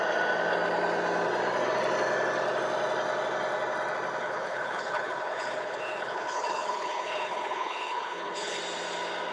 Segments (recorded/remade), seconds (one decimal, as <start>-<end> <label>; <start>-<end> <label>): 0.0-4.2 recorded; 4.2-8.6 remade; 8.6-9.3 recorded